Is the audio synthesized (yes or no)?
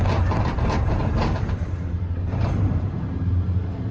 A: yes